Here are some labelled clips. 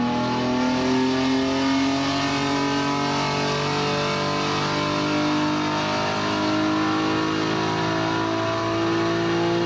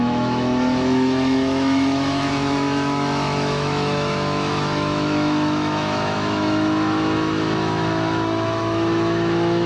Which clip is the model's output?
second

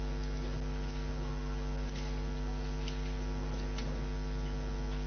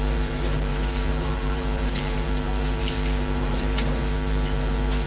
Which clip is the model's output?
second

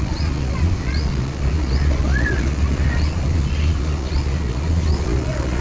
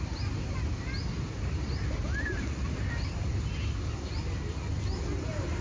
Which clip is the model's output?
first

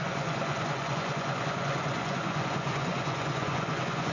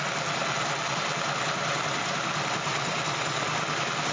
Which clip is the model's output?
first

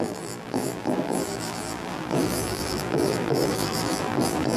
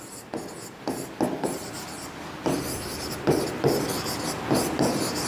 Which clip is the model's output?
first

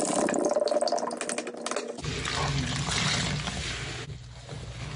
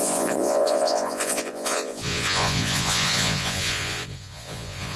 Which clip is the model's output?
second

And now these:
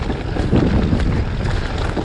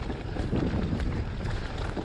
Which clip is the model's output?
second